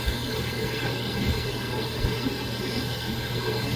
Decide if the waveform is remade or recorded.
remade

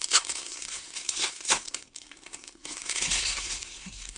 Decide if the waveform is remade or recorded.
remade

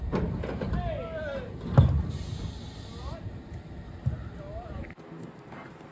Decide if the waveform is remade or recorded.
recorded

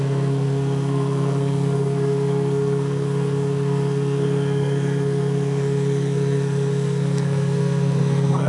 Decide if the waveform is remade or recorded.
remade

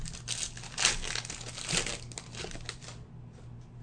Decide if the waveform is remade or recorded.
recorded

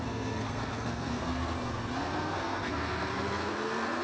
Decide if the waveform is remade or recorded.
remade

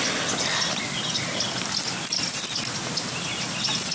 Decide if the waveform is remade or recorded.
recorded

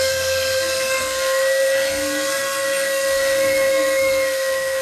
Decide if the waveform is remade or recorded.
remade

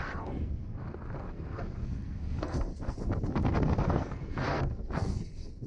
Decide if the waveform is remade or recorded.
remade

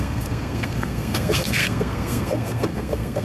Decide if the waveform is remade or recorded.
remade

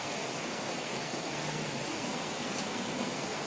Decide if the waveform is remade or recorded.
remade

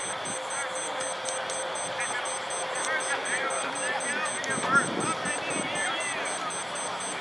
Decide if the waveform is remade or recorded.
recorded